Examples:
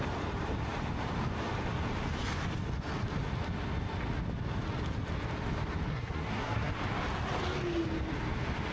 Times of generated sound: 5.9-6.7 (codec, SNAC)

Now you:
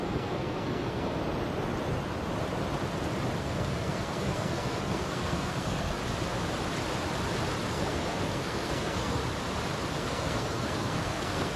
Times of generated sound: 0.0-1.2 (codec, SNAC); 3.4-6.0; 7.7-9.2; 9.9-11.6

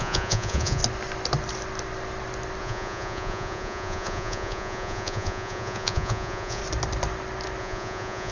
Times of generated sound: 0.0-0.8 (vocoder, Vocos); 2.6-6.6; 7.6-8.3

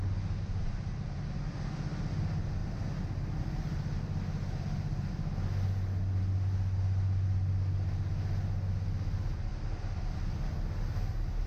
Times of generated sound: none

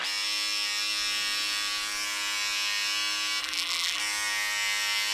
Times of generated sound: 3.4-4.0 (vocoder, BigVGAN v2)